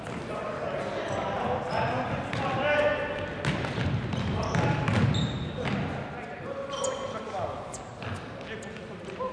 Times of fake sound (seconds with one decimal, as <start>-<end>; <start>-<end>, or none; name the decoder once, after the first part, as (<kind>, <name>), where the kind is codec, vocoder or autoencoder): none